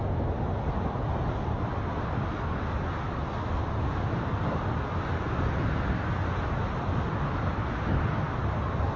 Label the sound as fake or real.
real